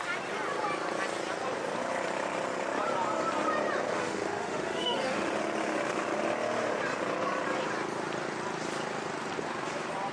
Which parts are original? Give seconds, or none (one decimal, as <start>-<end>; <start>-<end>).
0.0-3.9; 5.3-10.1